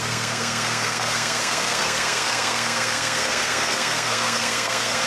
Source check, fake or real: fake